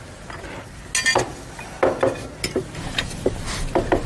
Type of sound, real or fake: real